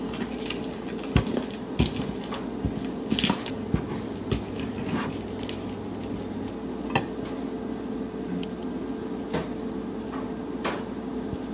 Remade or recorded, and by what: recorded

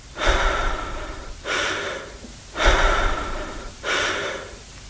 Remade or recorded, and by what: remade, vocoder, BigVGAN v2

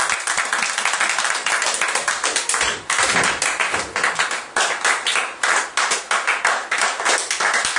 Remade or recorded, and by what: recorded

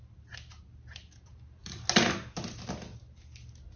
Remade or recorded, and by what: recorded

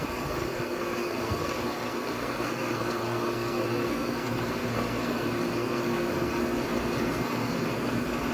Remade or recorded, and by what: remade, codec, SNAC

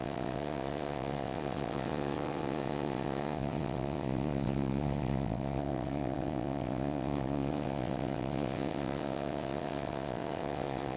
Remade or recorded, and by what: remade, vocoder, WaveNeXt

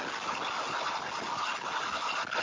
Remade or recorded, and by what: recorded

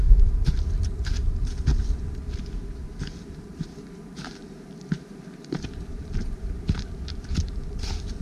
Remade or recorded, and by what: remade, vocoder, BigVGAN v2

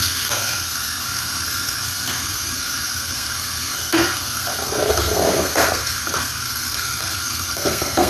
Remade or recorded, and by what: remade, codec, SNAC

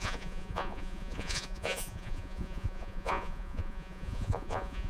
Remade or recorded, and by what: remade, vocoder, Vocos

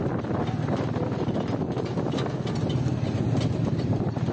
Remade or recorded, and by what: recorded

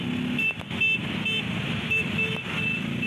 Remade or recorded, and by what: recorded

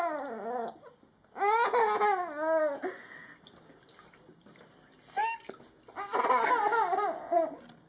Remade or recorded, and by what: recorded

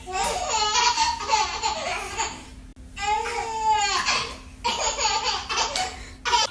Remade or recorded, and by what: recorded